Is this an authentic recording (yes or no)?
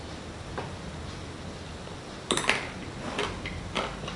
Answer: yes